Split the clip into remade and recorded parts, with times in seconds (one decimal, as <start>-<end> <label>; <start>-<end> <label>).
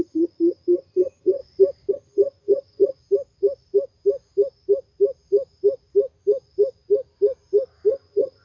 0.0-1.4 remade; 1.4-1.9 recorded; 1.9-3.0 remade; 3.0-7.9 recorded; 7.9-8.4 remade